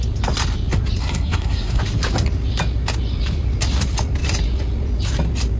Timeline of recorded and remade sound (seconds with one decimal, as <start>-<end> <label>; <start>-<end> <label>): 0.0-1.0 recorded; 1.0-1.8 remade; 1.8-5.6 recorded